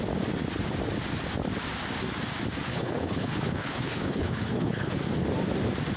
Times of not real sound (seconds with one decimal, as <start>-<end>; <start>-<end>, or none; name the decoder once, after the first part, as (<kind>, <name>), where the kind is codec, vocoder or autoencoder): 2.7-4.9 (codec, HILCodec)